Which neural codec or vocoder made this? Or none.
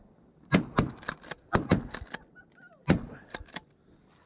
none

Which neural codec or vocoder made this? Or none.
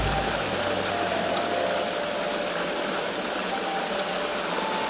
none